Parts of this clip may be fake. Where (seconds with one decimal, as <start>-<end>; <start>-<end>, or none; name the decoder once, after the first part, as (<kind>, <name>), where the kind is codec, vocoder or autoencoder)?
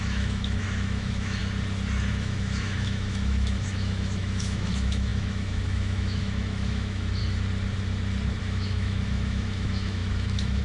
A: 0.0-1.4 (autoencoder, DAC-VAE); 2.1-7.2; 8.4-10.6